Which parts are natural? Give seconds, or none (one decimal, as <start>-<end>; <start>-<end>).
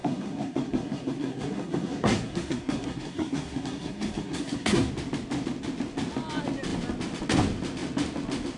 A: 4.9-8.6